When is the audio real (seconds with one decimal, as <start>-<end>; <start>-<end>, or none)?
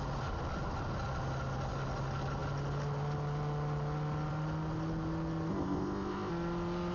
0.0-5.5; 6.3-6.9